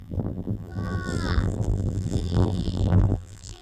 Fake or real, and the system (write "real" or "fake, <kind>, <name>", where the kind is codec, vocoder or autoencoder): fake, vocoder, BigVGAN v2